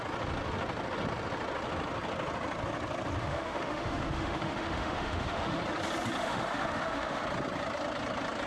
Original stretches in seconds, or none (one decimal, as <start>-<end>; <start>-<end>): 0.0-3.2; 5.6-6.2; 7.2-8.5